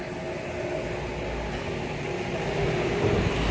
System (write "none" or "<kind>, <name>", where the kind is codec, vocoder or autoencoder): none